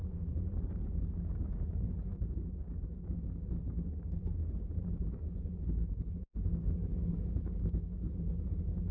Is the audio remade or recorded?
remade